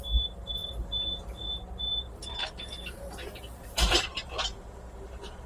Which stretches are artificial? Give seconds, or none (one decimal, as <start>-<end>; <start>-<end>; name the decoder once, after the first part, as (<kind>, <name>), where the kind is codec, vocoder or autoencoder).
none